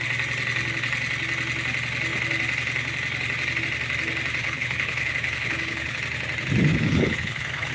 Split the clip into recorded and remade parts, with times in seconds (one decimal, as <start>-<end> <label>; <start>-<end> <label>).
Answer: 0.0-4.4 recorded; 4.4-6.0 remade; 6.0-6.7 recorded; 6.7-7.7 remade